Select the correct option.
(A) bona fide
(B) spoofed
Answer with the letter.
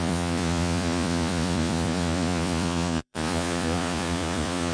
B